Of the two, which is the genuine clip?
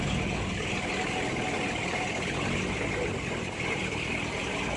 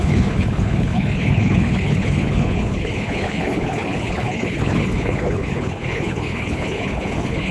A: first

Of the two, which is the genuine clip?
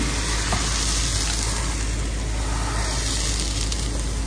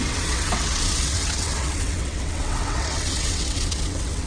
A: first